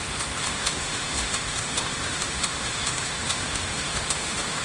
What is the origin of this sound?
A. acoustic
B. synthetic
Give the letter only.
B